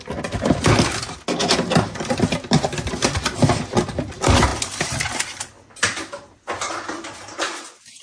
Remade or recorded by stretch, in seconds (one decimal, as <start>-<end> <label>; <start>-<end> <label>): 0.0-8.0 recorded